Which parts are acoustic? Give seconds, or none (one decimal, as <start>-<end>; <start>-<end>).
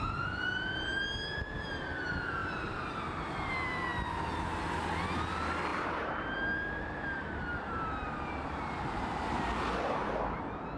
0.0-2.4; 3.5-5.7; 9.4-10.8